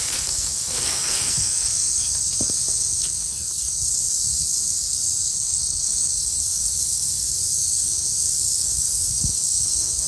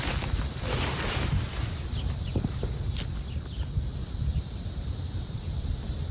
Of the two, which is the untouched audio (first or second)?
second